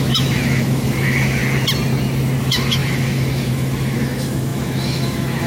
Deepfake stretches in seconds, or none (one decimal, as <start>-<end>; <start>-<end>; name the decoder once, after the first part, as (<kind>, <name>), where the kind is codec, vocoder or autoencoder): 0.0-1.4 (autoencoder, DAC-VAE); 2.4-5.5